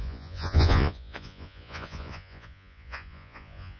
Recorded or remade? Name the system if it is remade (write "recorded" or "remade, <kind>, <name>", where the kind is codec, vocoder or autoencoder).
remade, vocoder, Vocos